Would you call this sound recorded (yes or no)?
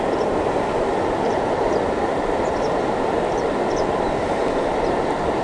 yes